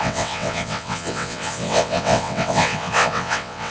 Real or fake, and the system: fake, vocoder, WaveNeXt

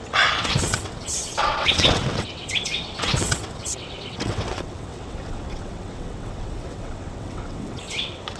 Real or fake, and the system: fake, vocoder, WaveNeXt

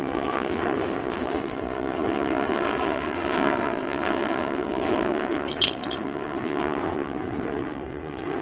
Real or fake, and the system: fake, vocoder, WaveNeXt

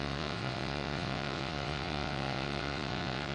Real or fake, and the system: fake, vocoder, WaveNeXt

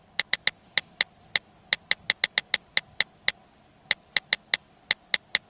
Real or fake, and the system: real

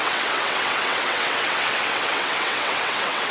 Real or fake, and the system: fake, vocoder, WaveNeXt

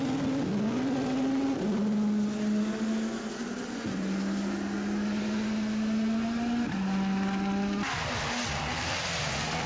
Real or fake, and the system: real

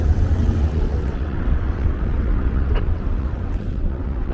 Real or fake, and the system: fake, vocoder, WaveNeXt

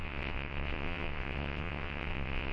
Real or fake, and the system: fake, vocoder, WaveNeXt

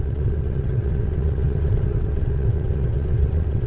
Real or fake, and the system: fake, vocoder, WaveNeXt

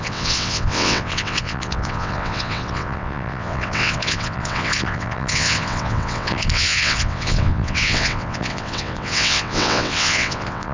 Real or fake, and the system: fake, vocoder, WaveNeXt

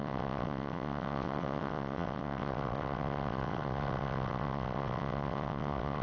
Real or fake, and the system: fake, vocoder, WaveNeXt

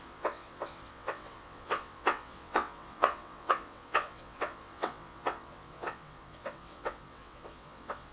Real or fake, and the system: fake, vocoder, WaveNeXt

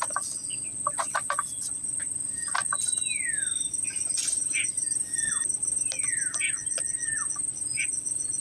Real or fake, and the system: real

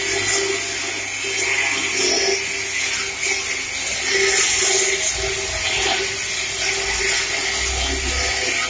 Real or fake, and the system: real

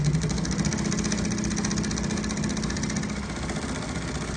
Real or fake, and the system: real